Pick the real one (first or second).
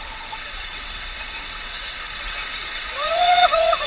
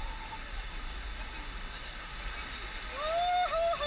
second